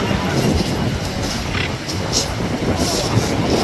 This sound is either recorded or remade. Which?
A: recorded